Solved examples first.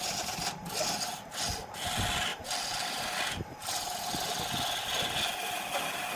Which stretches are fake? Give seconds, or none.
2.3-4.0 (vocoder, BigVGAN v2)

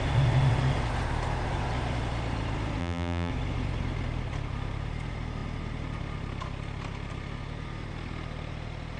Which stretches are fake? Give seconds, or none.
2.8-3.3 (vocoder, BigVGAN v2)

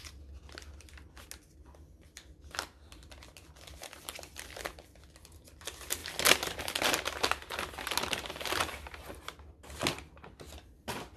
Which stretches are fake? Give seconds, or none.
3.8-5.1 (vocoder, BigVGAN v2)

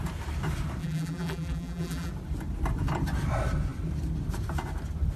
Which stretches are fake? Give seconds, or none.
0.8-2.1 (vocoder, BigVGAN v2)

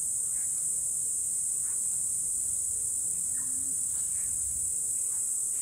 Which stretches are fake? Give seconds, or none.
1.2-4.3 (vocoder, BigVGAN v2)

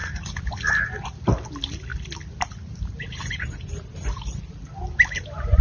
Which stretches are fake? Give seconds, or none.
0.0-0.7 (vocoder, BigVGAN v2)